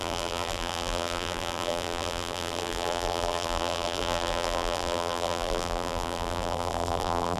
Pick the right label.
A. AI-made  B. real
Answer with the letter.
A